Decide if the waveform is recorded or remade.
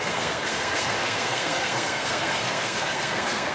remade